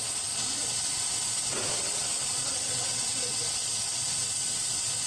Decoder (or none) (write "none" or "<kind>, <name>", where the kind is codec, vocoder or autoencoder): vocoder, WaveNeXt